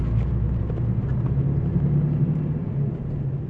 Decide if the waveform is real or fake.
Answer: real